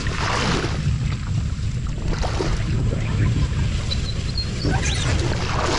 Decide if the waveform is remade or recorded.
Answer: recorded